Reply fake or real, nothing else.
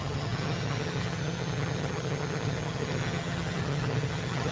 fake